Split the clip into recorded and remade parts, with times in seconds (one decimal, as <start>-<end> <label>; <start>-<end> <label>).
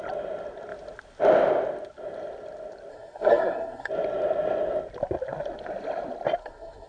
0.0-2.9 recorded; 2.9-3.9 remade; 3.9-6.4 recorded; 6.4-6.9 remade